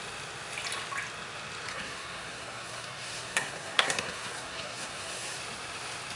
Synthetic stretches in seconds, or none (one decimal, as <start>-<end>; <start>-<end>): 1.7-5.4